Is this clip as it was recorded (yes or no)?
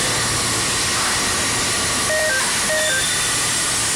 yes